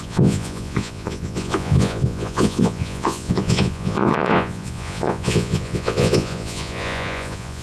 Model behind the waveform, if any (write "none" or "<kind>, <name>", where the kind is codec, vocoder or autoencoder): vocoder, Vocos